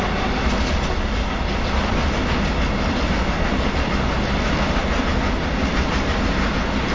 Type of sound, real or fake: real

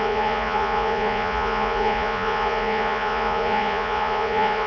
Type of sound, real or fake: fake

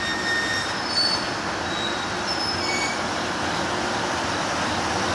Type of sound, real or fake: real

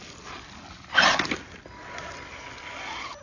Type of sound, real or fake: real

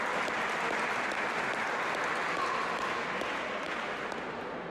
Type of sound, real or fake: real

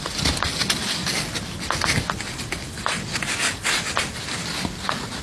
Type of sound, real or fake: real